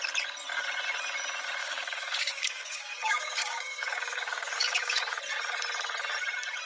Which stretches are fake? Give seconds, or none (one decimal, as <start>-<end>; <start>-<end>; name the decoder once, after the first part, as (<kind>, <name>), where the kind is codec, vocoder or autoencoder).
1.6-5.2 (codec, DAC)